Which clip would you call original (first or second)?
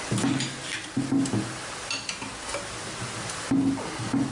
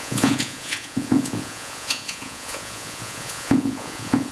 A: first